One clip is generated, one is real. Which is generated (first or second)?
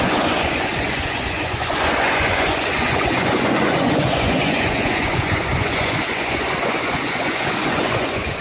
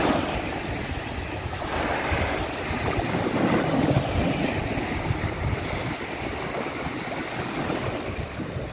first